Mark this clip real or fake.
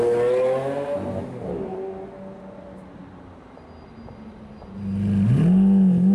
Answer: real